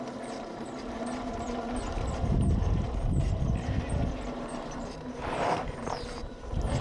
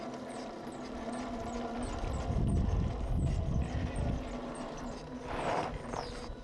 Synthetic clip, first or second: first